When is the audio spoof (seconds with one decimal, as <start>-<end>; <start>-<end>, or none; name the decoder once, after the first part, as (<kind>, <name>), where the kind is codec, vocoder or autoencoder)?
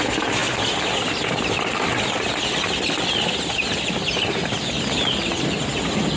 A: none